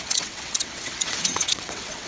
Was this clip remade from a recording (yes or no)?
yes